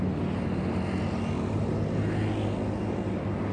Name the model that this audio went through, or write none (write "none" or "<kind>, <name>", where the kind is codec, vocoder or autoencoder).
none